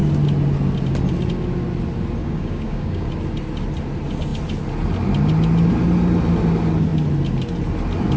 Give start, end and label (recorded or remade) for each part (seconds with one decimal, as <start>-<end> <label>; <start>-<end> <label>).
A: 0.0-2.2 recorded; 2.2-3.1 remade; 3.1-8.2 recorded